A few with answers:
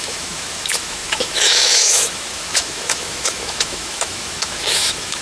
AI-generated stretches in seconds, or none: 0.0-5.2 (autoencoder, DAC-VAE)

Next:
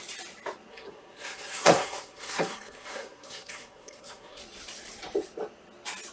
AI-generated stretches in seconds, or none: 0.7-4.4 (codec, SNAC)

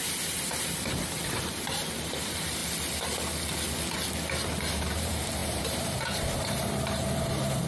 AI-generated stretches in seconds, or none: 0.0-2.6 (vocoder, BigVGAN v2); 4.7-7.7

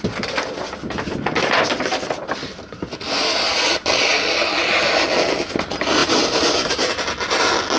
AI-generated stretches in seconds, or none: 6.0-6.7 (vocoder, BigVGAN v2)

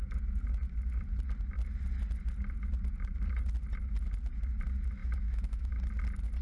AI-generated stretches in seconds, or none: 5.0-5.8 (autoencoder, DAC-VAE)

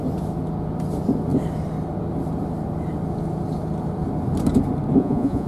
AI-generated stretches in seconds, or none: 5.0-5.5 (vocoder, Vocos)